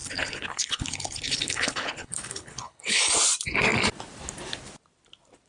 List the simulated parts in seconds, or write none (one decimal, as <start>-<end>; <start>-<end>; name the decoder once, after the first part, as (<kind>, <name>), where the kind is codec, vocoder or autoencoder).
0.0-3.0 (codec, HILCodec)